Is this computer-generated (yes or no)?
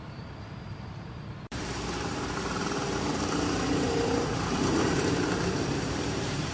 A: yes